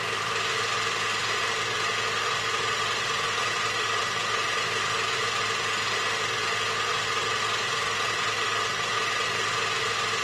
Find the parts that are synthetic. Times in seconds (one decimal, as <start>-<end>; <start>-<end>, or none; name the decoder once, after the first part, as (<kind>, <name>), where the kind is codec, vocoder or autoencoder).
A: none